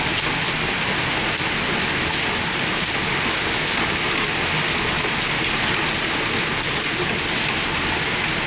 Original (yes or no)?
yes